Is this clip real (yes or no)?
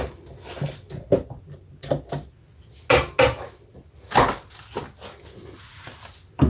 yes